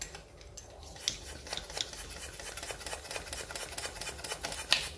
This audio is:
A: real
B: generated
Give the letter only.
A